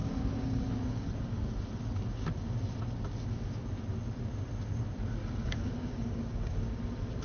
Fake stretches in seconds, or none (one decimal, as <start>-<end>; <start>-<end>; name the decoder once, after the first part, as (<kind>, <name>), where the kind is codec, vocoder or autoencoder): 0.0-1.1 (codec, DAC); 5.2-6.8